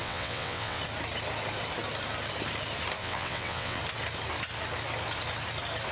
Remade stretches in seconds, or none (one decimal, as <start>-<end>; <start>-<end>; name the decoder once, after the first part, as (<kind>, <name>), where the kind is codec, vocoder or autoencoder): 0.0-0.8 (vocoder, WaveNeXt); 3.0-3.8